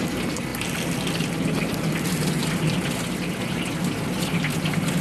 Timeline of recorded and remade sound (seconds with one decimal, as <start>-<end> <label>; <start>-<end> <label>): 0.0-5.0 recorded